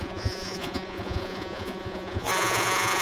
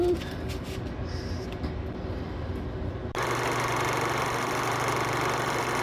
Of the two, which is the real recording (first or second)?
second